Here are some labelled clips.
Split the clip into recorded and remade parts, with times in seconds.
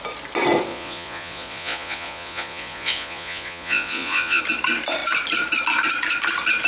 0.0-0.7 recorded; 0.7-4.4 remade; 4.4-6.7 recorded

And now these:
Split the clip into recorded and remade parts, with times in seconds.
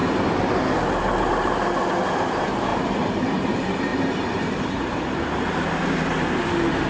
0.0-2.7 recorded; 2.7-3.5 remade; 3.5-3.9 recorded; 3.9-5.0 remade; 5.0-6.9 recorded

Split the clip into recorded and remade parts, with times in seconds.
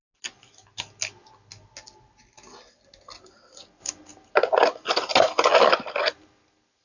0.0-6.8 recorded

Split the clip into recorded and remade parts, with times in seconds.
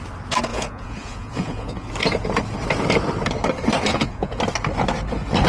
0.0-0.5 recorded; 0.5-1.9 remade; 1.9-3.9 recorded; 3.9-4.4 remade; 4.4-5.5 recorded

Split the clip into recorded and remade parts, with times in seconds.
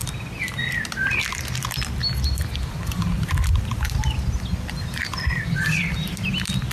0.0-6.7 recorded